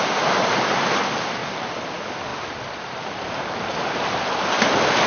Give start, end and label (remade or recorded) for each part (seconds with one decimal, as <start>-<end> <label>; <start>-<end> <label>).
0.0-1.4 remade; 1.4-1.9 recorded; 1.9-2.3 remade; 2.3-3.3 recorded; 3.3-5.1 remade